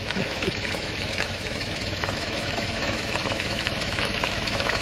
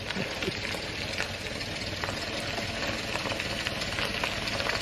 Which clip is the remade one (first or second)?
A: first